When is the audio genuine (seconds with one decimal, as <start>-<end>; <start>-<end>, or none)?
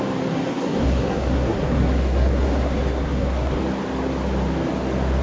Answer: 0.0-0.5; 3.6-5.2